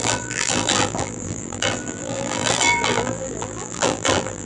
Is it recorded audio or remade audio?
remade